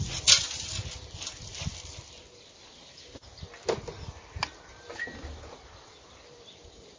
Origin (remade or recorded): recorded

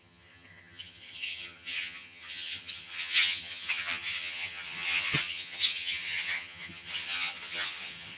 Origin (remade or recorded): remade